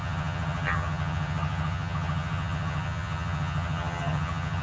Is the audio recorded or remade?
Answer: remade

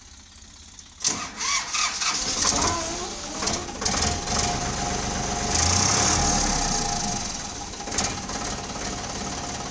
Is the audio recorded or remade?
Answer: recorded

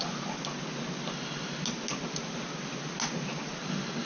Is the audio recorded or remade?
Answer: recorded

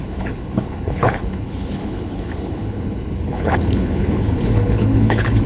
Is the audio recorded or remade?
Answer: remade